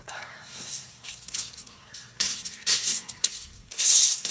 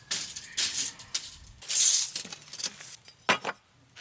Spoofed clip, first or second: first